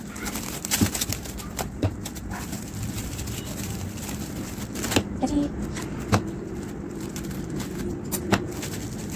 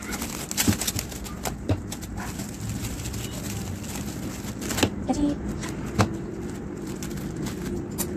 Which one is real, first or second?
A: second